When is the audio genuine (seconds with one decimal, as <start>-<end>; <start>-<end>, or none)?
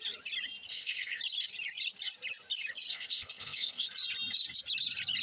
0.0-0.7; 1.2-2.9; 3.9-5.2